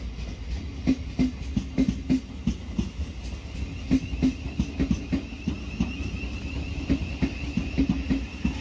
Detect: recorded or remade recorded